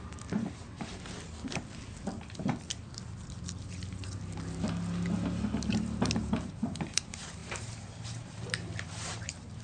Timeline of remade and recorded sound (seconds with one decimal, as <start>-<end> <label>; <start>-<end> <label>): 0.0-0.9 remade; 0.9-5.7 recorded; 5.7-9.6 remade